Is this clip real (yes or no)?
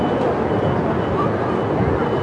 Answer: yes